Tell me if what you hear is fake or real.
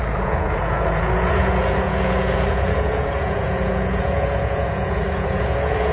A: fake